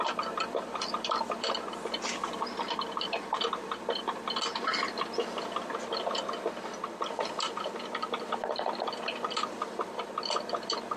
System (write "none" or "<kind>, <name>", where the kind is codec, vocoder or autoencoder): vocoder, BigVGAN v2